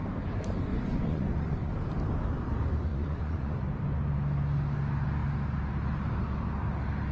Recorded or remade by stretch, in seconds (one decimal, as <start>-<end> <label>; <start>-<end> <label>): 0.0-0.7 recorded; 0.7-1.7 remade; 1.7-2.9 recorded; 2.9-3.6 remade; 3.6-7.1 recorded